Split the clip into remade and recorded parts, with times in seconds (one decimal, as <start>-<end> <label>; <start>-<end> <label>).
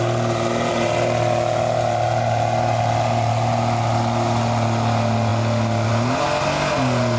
0.0-7.2 recorded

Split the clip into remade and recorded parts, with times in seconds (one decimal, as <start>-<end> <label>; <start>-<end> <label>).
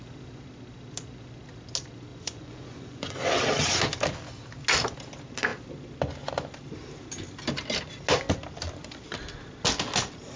0.0-2.1 recorded; 2.1-3.4 remade; 3.4-10.4 recorded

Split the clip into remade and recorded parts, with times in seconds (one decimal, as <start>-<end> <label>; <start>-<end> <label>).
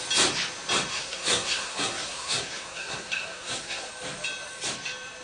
0.0-0.9 recorded; 0.9-3.9 remade; 3.9-5.2 recorded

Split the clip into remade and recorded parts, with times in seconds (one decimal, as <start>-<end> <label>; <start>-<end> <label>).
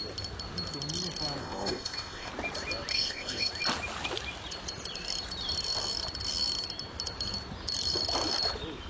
0.0-1.4 recorded; 1.4-2.3 remade; 2.3-2.9 recorded; 2.9-3.5 remade; 3.5-8.9 recorded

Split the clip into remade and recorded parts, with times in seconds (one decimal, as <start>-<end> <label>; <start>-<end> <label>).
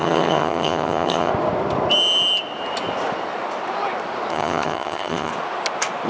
0.0-1.3 remade; 1.3-4.3 recorded; 4.3-5.3 remade; 5.3-6.1 recorded